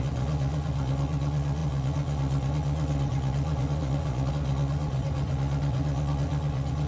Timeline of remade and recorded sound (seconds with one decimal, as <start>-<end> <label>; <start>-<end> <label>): 0.0-6.9 remade